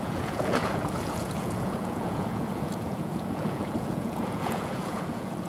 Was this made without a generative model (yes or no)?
no